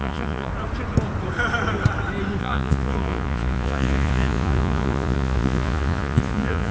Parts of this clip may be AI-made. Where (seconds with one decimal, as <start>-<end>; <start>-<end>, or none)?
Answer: 0.0-0.5; 2.4-6.7